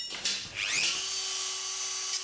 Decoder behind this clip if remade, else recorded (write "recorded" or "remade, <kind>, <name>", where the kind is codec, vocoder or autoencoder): recorded